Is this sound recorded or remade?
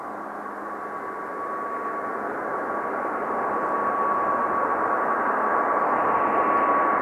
recorded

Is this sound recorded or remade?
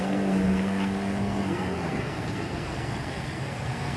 remade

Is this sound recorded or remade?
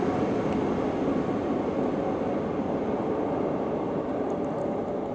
recorded